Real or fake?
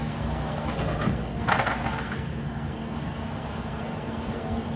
fake